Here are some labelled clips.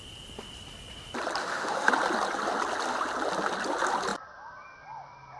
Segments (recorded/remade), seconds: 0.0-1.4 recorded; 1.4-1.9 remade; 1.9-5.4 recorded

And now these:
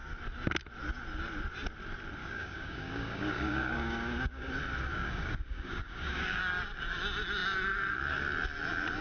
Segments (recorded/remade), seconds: 0.0-2.2 recorded; 2.2-4.5 remade; 4.5-4.9 recorded; 4.9-6.4 remade; 6.4-9.0 recorded

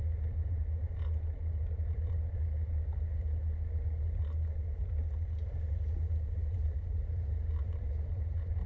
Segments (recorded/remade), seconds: 0.0-6.4 recorded; 6.4-8.7 remade